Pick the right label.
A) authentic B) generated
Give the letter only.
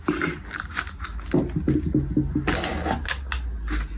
A